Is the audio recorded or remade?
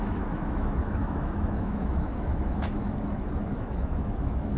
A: remade